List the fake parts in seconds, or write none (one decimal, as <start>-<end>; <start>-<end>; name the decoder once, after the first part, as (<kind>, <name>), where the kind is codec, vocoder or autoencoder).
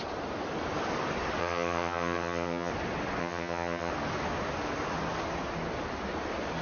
1.4-2.7 (vocoder, HiFi-GAN); 3.2-3.9